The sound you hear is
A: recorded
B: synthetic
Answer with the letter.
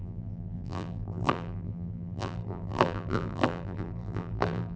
B